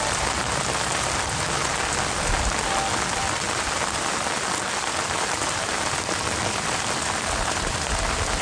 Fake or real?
real